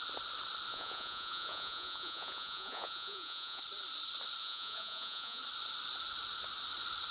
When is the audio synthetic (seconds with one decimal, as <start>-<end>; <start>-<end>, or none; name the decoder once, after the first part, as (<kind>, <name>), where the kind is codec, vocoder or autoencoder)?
0.7-3.6 (vocoder, Vocos); 4.4-5.4